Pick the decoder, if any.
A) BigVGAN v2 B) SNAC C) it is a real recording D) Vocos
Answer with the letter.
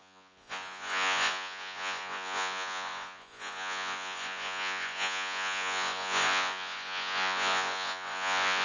D